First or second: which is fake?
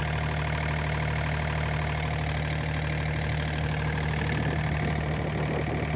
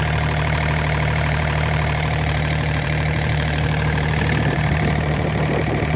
second